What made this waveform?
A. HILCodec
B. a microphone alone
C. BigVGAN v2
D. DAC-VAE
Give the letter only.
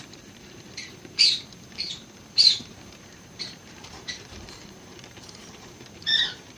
C